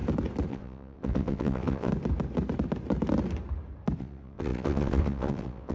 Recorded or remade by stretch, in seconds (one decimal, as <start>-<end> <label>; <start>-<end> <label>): 0.0-0.5 recorded; 0.5-1.9 remade; 1.9-4.0 recorded; 4.0-5.7 remade